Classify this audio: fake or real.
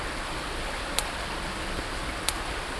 real